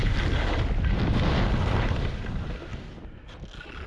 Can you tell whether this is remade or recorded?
recorded